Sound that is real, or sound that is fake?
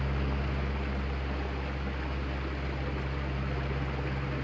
real